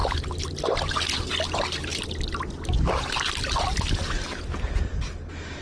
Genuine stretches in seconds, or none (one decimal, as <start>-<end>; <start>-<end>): 0.0-5.6